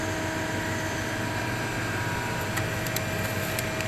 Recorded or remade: recorded